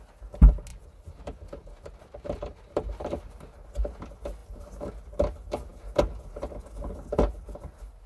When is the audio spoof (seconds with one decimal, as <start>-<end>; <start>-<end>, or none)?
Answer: 0.7-3.7